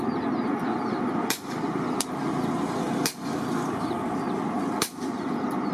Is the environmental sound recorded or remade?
recorded